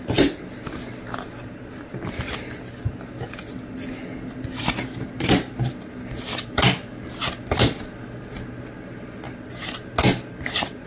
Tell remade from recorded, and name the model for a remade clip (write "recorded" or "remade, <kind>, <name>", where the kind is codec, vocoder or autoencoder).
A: recorded